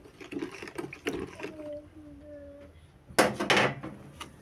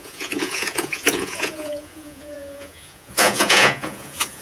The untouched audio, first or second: first